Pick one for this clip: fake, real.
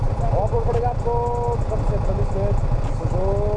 real